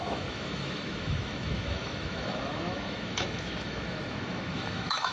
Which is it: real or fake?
fake